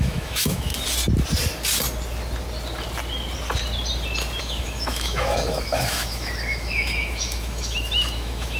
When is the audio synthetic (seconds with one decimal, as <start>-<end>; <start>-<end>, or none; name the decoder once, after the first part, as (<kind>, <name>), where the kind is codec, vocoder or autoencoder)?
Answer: 0.0-0.7 (autoencoder, DAC-VAE); 4.4-8.6